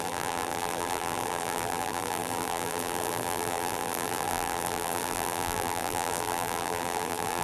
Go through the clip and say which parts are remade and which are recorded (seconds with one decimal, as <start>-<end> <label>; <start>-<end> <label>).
0.0-7.4 remade